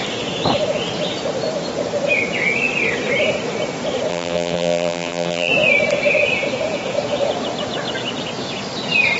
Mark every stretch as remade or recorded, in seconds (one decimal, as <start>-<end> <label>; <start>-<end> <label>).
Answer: 0.0-4.1 recorded; 4.1-5.5 remade; 5.5-9.2 recorded